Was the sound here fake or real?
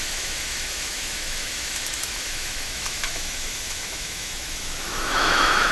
fake